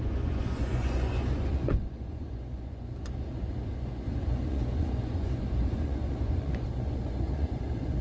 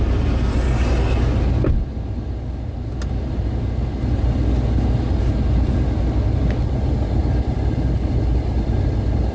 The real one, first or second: second